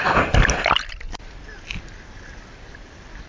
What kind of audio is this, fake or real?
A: real